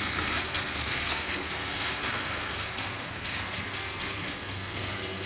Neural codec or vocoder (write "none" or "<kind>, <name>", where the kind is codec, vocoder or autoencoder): codec, SNAC